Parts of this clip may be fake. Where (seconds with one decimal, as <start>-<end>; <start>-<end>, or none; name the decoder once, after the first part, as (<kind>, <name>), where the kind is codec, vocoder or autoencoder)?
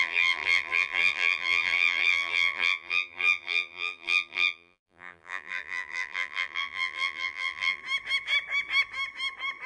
0.0-7.8 (vocoder, BigVGAN v2)